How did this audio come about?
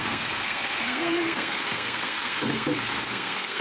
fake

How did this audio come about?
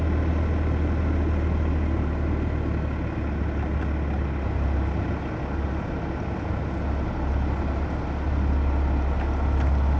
real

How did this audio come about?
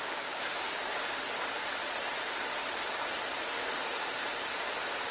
real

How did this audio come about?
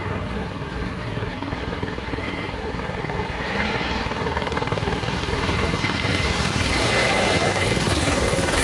fake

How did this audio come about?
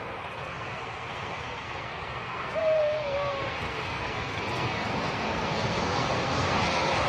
fake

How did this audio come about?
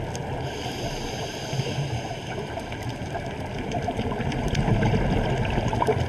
real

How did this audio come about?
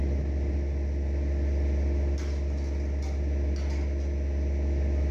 real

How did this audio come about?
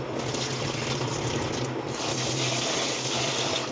real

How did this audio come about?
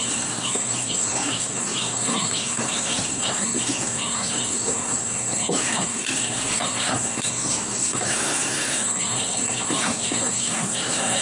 fake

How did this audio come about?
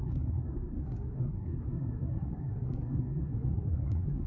fake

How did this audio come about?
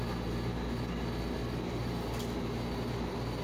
real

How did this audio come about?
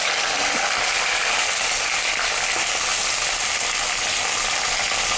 real